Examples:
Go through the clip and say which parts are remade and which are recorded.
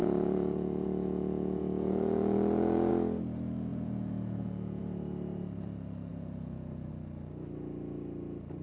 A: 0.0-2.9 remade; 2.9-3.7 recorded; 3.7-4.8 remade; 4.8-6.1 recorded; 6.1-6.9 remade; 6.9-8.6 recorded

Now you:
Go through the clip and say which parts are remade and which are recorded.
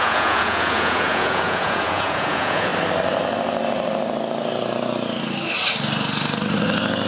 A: 0.0-2.7 remade; 2.7-7.1 recorded